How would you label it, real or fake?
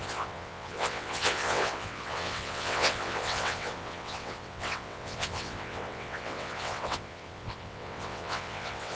fake